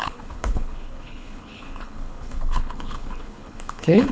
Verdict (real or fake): fake